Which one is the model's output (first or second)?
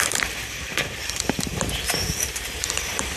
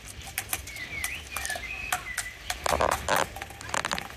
first